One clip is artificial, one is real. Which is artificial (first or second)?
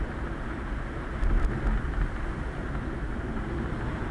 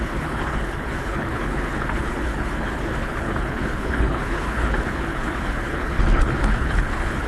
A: second